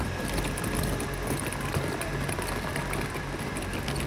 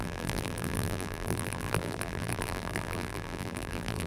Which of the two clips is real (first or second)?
first